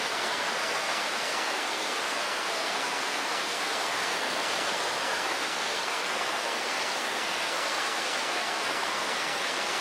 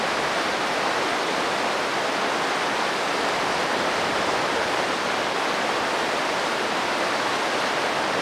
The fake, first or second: first